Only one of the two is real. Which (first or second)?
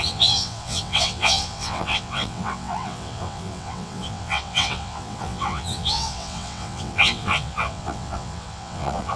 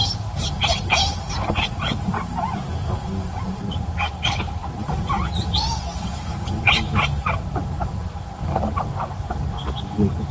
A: second